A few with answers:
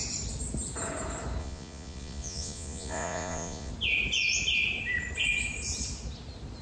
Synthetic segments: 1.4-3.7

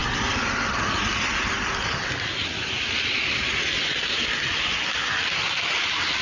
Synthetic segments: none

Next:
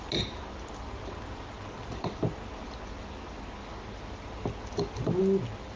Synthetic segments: none

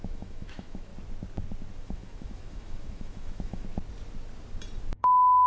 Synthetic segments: 0.0-0.9; 1.8-3.7; 5.0-5.5

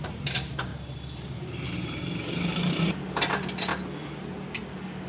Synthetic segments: 0.0-0.7; 2.3-3.7

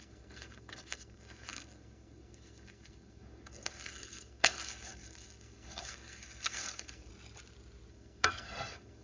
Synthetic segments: 0.0-7.1; 7.9-9.0

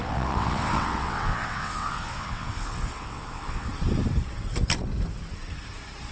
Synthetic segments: 0.0-3.7

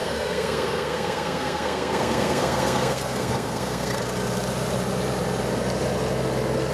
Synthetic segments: 0.0-4.0